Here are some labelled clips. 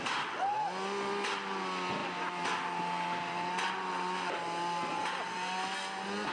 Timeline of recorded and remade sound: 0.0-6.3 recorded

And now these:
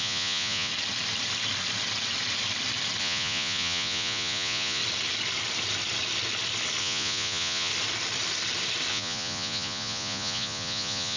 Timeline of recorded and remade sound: 0.0-0.7 remade; 0.7-3.0 recorded; 3.0-4.8 remade; 4.8-6.8 recorded; 6.8-7.7 remade; 7.7-8.9 recorded; 8.9-11.2 remade

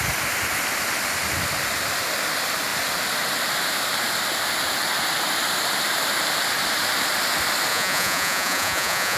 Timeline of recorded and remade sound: 0.0-7.7 recorded; 7.7-9.2 remade

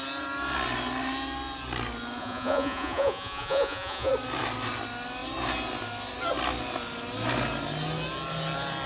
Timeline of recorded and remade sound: 0.0-2.2 recorded; 2.2-4.1 remade; 4.1-8.9 recorded

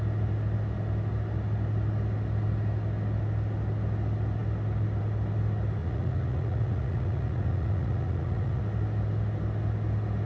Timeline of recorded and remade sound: 0.0-5.8 recorded; 5.8-8.6 remade; 8.6-10.3 recorded